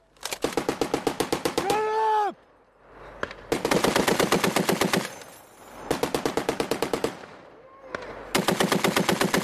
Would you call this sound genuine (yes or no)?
yes